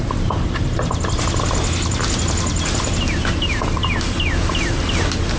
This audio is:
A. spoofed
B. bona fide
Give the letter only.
B